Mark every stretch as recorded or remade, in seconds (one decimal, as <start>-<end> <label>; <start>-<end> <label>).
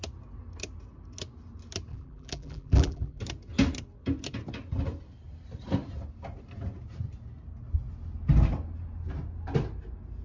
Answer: 0.0-1.9 recorded; 1.9-3.2 remade; 3.2-10.2 recorded